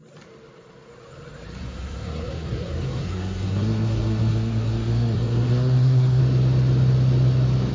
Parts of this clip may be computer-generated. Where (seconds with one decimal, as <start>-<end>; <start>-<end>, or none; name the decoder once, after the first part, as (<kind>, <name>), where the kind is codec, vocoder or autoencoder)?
1.6-6.2 (codec, SNAC)